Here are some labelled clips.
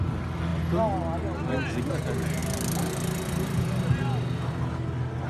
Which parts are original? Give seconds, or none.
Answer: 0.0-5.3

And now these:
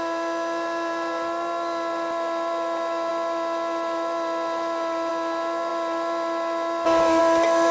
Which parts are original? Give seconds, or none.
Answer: 0.0-7.7

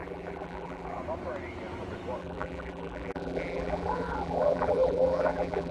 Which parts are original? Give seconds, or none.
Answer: 1.0-2.2

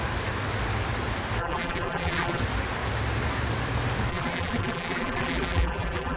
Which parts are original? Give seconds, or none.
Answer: 0.0-1.4; 2.4-4.1